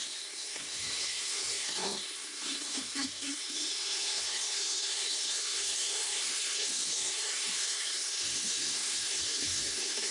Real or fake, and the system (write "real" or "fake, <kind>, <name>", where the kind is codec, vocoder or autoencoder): fake, codec, SNAC